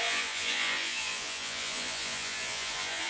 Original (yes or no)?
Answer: no